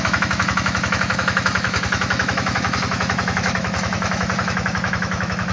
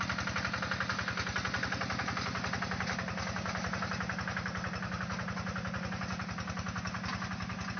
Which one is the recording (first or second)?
second